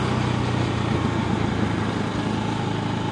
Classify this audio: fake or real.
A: real